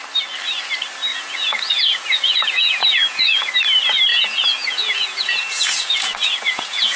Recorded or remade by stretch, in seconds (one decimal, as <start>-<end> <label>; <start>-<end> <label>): 0.0-1.1 recorded; 1.1-3.5 remade; 3.5-4.1 recorded; 4.1-7.0 remade